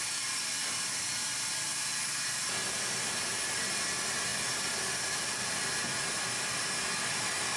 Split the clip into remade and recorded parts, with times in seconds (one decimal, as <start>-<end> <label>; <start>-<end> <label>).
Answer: 0.0-7.6 recorded